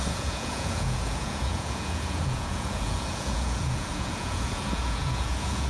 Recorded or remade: remade